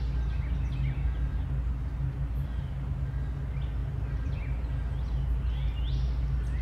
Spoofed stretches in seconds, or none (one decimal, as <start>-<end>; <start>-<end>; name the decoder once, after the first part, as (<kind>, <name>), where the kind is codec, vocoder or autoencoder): 3.8-4.4 (vocoder, BigVGAN v2)

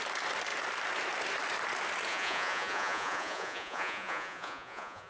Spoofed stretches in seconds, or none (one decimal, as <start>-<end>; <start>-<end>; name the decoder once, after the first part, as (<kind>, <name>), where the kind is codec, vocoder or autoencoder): 2.1-5.1 (vocoder, Vocos)

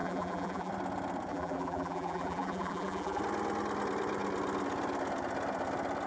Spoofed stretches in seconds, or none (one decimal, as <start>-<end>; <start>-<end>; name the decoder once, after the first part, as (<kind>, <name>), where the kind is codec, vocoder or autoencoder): 0.0-0.7 (vocoder, BigVGAN v2); 1.3-3.2

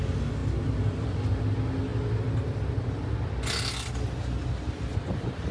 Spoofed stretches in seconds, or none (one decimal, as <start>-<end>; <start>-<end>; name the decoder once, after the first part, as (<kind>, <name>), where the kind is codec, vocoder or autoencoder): none

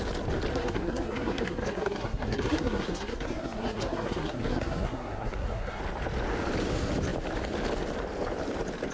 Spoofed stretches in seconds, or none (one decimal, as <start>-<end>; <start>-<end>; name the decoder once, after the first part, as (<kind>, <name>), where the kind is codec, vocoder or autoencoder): 0.5-5.8 (codec, SNAC)

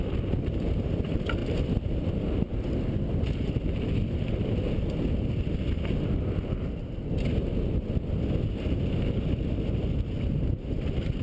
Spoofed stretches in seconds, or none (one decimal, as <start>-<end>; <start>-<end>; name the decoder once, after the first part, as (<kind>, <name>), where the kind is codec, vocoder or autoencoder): none

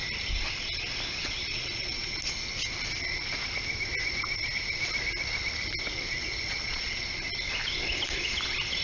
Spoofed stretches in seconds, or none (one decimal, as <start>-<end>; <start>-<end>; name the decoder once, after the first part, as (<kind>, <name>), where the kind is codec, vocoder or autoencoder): 1.5-2.2 (vocoder, Vocos); 6.2-7.0